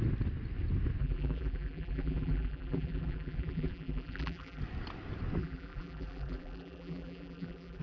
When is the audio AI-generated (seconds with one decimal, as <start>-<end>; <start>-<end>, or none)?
1.0-4.6; 5.4-7.8